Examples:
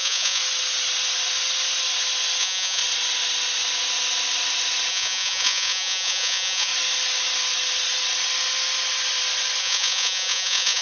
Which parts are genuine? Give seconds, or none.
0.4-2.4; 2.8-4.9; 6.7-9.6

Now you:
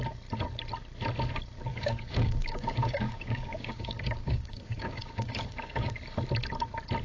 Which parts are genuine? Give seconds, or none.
0.0-1.7; 5.9-7.0

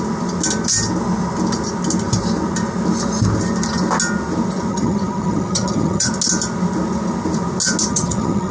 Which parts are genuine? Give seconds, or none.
0.0-4.7; 6.1-7.9

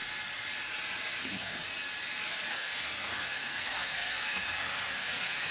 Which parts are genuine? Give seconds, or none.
0.0-1.2; 1.6-2.5

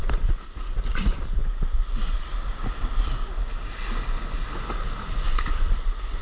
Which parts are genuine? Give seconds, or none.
0.0-6.2

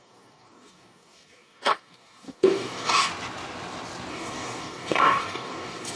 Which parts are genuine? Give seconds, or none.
3.1-4.1

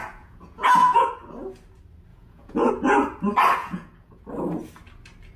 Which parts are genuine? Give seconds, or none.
1.1-2.1; 2.7-3.6; 4.2-5.4

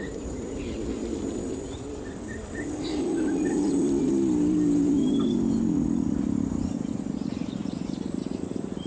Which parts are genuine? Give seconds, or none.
0.0-8.9